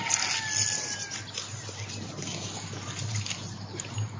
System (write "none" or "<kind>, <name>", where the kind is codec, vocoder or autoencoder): none